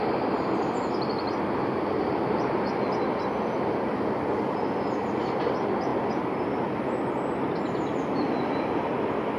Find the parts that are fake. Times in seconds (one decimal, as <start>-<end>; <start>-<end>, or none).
none